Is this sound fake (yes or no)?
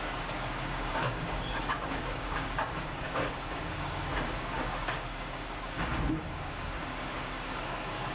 yes